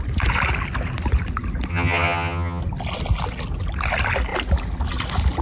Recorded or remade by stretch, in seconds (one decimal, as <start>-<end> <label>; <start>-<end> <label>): 0.0-1.7 recorded; 1.7-2.6 remade; 2.6-5.4 recorded